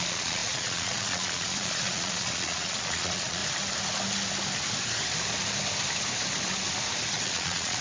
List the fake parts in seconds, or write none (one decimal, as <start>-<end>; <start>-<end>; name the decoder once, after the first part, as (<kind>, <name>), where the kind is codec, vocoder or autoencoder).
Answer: 0.0-3.4 (vocoder, Vocos); 7.1-7.8